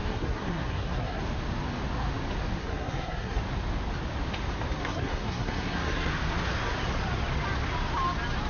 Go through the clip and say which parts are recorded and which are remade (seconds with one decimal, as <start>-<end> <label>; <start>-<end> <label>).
0.0-1.2 remade; 1.2-2.6 recorded; 2.6-3.4 remade; 3.4-4.8 recorded; 4.8-6.1 remade; 6.1-8.5 recorded